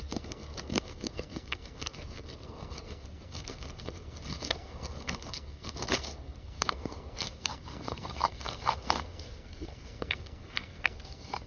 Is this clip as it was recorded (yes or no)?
no